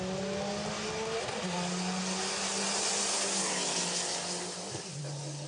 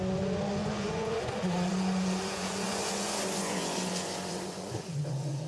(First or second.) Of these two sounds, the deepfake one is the second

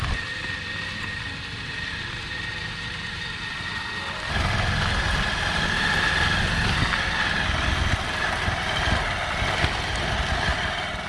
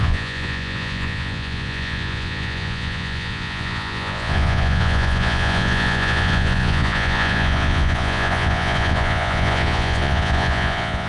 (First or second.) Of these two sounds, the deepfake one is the second